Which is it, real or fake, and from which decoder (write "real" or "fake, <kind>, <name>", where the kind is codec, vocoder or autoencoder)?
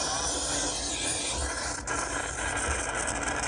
real